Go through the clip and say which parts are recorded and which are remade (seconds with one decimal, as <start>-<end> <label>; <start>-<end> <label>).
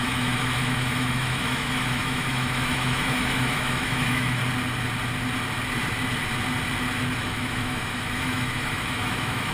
0.0-4.4 remade; 4.4-7.2 recorded; 7.2-9.5 remade